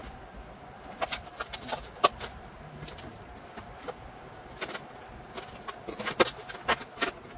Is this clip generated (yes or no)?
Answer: no